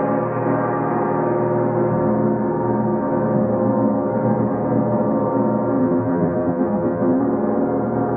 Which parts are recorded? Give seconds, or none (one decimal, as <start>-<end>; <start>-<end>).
0.0-5.8; 7.2-8.2